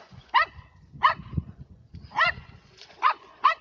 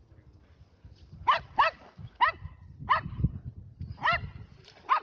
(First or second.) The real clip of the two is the second